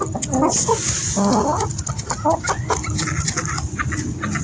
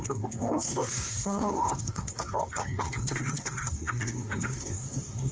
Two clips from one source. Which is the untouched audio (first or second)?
first